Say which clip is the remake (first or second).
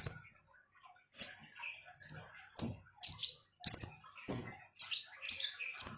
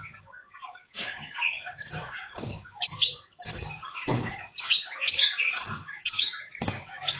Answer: second